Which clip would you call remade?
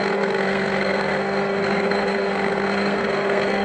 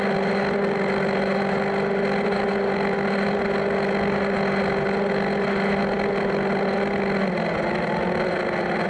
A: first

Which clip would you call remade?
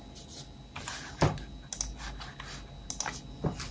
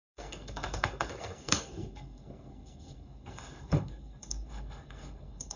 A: second